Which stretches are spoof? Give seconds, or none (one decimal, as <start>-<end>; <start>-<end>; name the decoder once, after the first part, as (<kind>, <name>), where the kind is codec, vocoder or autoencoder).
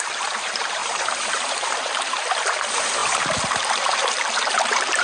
0.0-5.0 (vocoder, BigVGAN v2)